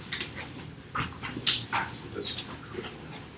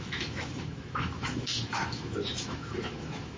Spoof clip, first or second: second